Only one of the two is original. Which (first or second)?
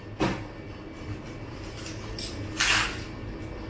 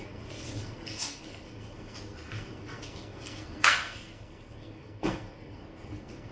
first